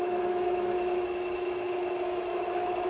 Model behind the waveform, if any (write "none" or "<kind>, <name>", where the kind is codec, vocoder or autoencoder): autoencoder, DAC-VAE